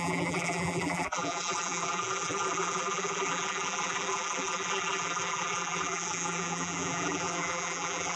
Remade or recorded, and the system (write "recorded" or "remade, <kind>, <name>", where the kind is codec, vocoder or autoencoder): remade, vocoder, BigVGAN v2